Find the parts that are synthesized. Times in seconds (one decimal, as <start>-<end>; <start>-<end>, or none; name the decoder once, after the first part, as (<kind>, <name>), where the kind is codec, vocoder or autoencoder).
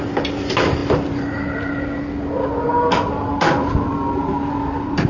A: none